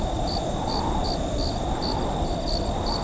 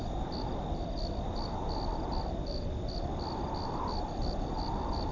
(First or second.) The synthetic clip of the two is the first